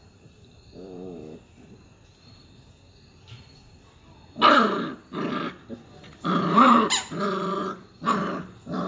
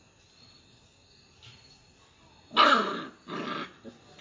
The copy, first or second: first